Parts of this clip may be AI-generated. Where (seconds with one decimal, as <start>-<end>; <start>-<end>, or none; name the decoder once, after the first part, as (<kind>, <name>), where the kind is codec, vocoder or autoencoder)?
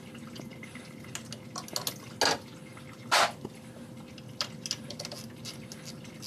none